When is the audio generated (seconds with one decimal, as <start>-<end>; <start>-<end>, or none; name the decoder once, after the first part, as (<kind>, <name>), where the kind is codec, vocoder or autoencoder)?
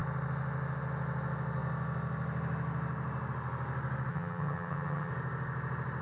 4.1-5.1 (vocoder, HiFi-GAN)